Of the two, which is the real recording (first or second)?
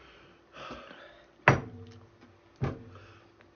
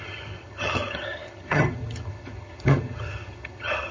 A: first